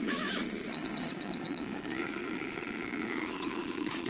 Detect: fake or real fake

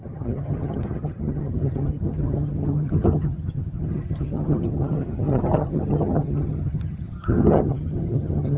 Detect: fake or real fake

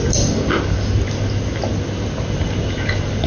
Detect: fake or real real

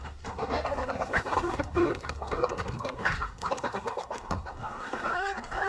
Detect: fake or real fake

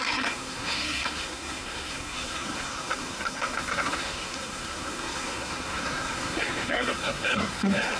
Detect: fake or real fake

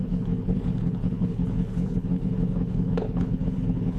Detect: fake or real fake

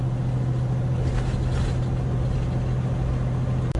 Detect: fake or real real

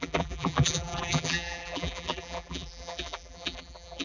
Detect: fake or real fake